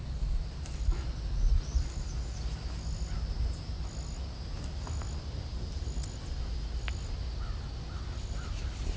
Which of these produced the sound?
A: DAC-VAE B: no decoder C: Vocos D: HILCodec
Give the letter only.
B